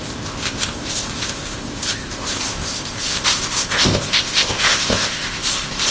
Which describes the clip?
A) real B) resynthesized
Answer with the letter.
B